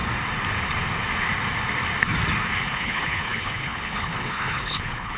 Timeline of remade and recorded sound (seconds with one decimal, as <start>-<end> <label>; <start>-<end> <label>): 0.0-2.7 recorded; 2.7-5.2 remade

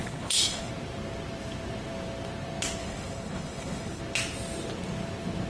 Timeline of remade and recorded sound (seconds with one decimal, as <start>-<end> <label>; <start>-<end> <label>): 0.0-0.7 remade; 0.7-2.8 recorded; 2.8-4.0 remade; 4.0-5.5 recorded

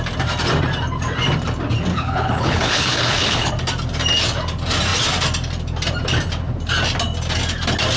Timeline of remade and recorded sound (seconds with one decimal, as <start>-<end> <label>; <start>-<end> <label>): 0.0-1.9 recorded; 1.9-3.5 remade; 3.5-8.0 recorded

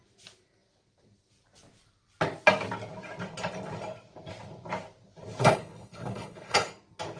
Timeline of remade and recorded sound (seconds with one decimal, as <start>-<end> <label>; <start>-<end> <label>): 0.0-5.4 recorded; 5.4-6.7 remade; 6.7-7.2 recorded

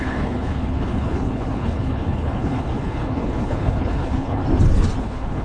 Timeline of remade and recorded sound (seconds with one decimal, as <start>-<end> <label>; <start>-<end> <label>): 0.0-4.4 remade; 4.4-5.0 recorded; 5.0-5.4 remade

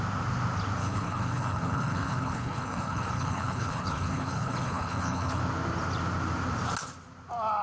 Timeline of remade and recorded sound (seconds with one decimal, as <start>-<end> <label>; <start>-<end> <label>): 0.0-0.8 recorded; 0.8-5.4 remade; 5.4-7.6 recorded

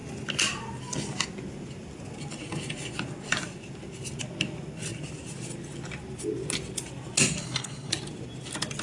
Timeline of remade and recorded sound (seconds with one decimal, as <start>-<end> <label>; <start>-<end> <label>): 0.0-7.4 recorded; 7.4-7.9 remade; 7.9-8.8 recorded